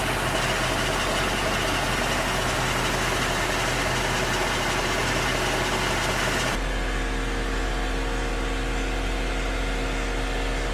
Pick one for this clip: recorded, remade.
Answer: recorded